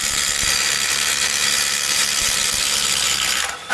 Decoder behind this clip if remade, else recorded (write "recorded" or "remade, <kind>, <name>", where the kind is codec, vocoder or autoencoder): remade, vocoder, BigVGAN v2